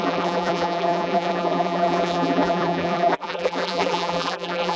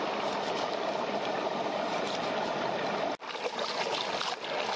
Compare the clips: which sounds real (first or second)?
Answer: second